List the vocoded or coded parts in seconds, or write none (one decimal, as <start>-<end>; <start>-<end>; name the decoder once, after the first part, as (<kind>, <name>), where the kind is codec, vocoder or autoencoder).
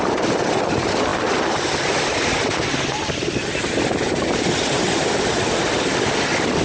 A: none